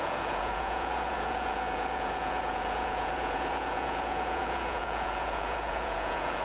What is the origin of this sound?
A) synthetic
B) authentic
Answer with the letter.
A